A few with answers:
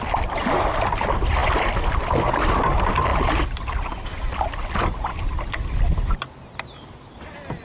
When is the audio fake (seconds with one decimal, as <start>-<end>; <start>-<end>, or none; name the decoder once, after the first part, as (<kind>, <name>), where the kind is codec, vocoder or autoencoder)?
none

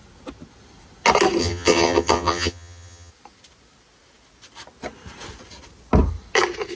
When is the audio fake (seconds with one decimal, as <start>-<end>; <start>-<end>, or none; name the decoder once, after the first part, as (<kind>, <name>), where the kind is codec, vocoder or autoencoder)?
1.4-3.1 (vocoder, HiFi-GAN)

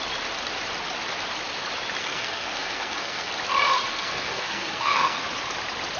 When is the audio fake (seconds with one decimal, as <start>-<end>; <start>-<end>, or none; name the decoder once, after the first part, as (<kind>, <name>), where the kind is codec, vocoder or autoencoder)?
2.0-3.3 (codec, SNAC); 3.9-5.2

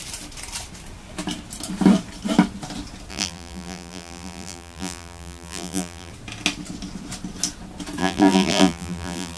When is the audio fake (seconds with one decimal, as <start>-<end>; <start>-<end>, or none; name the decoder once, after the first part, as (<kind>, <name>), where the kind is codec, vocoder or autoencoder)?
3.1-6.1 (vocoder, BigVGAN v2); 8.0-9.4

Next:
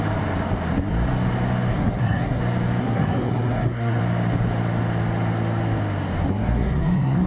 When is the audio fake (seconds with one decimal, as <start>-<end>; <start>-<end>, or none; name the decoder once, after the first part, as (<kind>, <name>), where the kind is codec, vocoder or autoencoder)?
1.7-2.4 (codec, SNAC); 2.8-4.0; 6.3-7.3

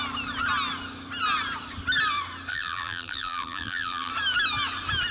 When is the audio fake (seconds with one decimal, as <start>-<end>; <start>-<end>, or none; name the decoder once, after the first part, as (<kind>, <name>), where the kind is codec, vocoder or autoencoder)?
2.5-4.1 (vocoder, BigVGAN v2)